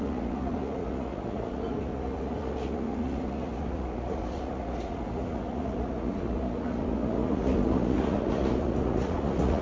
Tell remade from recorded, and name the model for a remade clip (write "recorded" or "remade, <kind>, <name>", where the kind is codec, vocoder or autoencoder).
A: remade, vocoder, Vocos